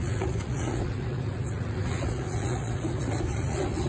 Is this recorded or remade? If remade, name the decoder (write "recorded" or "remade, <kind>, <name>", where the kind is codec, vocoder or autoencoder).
remade, vocoder, Vocos